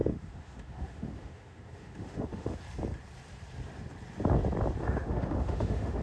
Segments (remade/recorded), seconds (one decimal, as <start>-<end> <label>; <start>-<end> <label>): 0.0-2.6 remade; 2.6-4.8 recorded; 4.8-6.0 remade